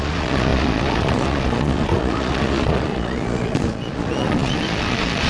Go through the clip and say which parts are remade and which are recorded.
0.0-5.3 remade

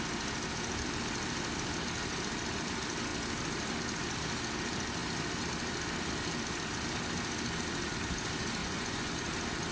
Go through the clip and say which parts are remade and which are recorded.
0.0-8.6 recorded; 8.6-9.1 remade; 9.1-9.7 recorded

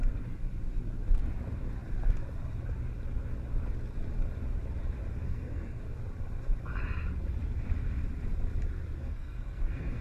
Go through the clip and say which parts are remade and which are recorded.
0.0-5.2 recorded; 5.2-5.8 remade; 5.8-9.0 recorded; 9.0-10.0 remade

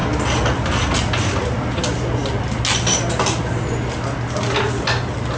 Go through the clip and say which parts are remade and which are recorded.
0.0-5.4 recorded

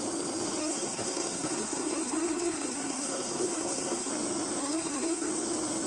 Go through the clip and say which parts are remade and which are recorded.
0.0-0.6 recorded; 0.6-4.1 remade; 4.1-4.6 recorded; 4.6-5.3 remade; 5.3-5.9 recorded

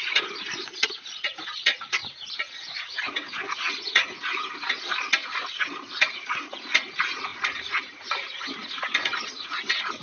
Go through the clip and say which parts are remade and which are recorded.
0.0-10.0 remade

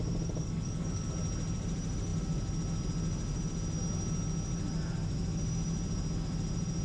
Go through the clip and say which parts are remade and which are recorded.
0.0-0.4 recorded; 0.4-1.1 remade; 1.1-6.8 recorded

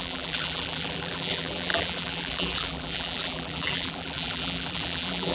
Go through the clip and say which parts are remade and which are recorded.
0.0-5.3 remade